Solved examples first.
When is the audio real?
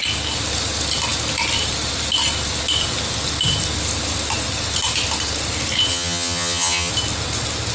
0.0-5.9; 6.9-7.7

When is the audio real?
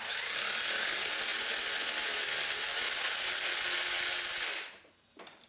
0.0-5.5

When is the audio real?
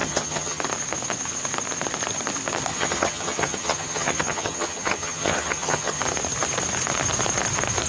0.6-2.7; 6.0-7.9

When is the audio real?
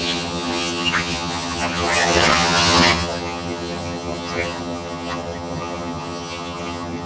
none